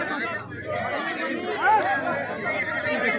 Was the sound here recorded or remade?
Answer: recorded